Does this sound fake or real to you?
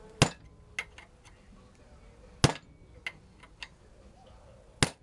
real